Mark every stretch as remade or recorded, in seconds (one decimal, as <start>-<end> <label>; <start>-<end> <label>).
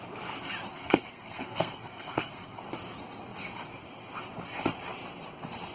0.0-0.7 recorded; 0.7-2.6 remade; 2.6-5.7 recorded